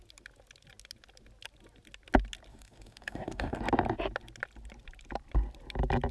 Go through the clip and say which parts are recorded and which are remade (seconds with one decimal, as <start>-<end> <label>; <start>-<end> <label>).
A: 0.0-2.5 recorded; 2.5-3.6 remade; 3.6-6.1 recorded